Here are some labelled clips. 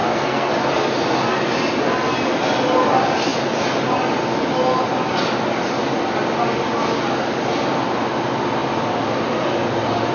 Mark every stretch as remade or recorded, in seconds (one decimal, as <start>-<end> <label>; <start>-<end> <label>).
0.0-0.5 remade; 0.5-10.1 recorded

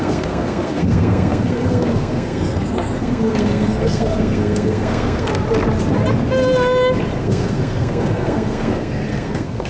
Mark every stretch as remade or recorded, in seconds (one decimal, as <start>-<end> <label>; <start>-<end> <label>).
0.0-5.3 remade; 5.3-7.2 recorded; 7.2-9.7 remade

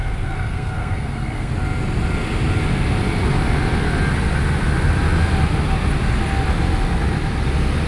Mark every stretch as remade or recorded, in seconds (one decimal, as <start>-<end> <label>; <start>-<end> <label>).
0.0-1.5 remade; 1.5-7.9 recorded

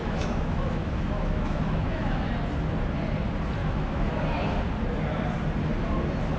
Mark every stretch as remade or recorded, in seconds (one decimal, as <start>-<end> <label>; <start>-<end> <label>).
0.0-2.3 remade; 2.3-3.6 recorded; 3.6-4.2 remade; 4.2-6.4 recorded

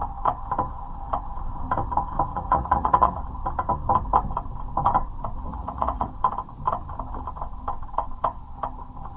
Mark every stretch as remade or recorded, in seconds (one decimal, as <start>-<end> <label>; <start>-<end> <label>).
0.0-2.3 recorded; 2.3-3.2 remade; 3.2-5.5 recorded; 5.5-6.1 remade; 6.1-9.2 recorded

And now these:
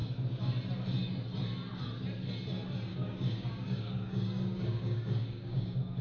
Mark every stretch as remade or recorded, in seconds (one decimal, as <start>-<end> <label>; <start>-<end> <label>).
0.0-2.9 recorded; 2.9-6.0 remade

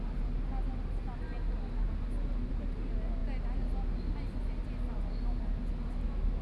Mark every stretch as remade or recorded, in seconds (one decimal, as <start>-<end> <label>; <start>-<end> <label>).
0.0-6.4 recorded